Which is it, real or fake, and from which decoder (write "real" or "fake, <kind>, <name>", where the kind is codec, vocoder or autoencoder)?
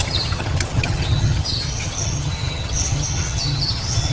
fake, vocoder, HiFi-GAN